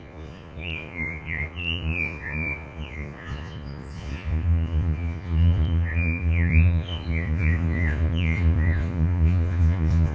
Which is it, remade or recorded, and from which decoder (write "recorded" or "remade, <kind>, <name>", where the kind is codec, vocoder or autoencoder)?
remade, vocoder, Vocos